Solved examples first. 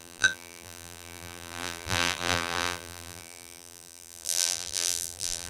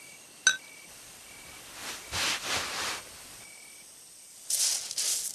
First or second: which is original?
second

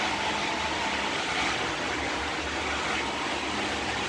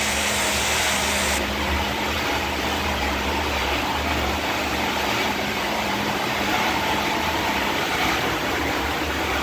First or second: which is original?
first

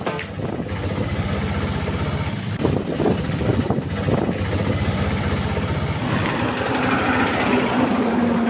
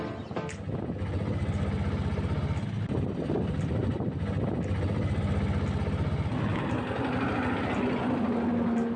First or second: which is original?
second